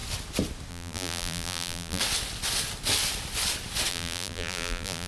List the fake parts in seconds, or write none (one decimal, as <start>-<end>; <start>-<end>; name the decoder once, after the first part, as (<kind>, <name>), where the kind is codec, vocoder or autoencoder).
0.7-2.0 (vocoder, BigVGAN v2); 3.9-5.1